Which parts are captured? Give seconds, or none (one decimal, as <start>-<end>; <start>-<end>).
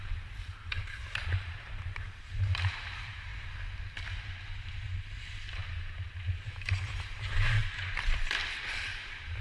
3.3-4.7; 7.6-8.7